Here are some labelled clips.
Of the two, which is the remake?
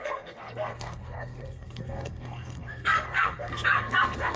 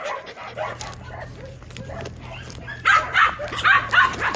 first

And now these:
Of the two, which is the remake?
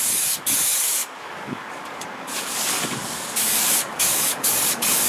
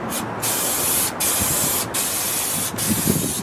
first